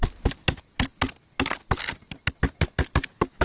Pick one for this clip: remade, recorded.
recorded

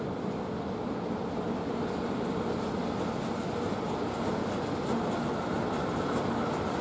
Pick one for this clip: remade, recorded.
recorded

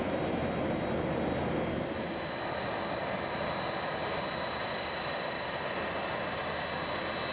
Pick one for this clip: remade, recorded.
recorded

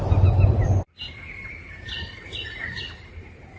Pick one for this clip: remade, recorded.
recorded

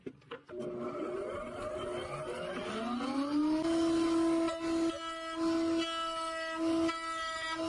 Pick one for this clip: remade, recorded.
recorded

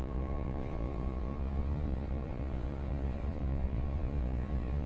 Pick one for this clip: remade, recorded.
remade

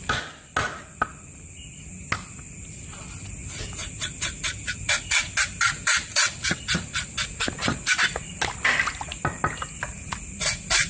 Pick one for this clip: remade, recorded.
recorded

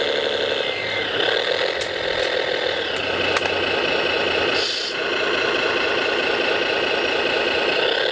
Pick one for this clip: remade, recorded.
recorded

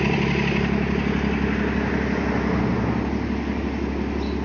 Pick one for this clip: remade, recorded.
recorded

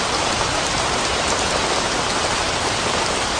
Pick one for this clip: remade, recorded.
recorded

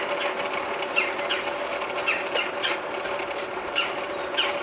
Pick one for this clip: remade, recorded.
recorded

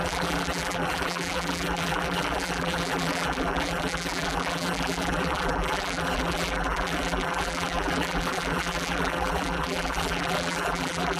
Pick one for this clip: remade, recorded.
remade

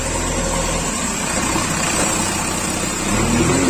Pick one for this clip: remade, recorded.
remade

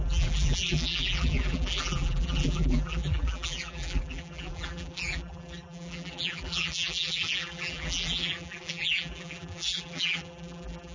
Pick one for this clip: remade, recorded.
remade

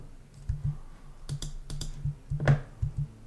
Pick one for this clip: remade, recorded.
recorded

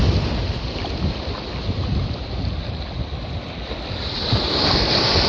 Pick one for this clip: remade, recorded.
recorded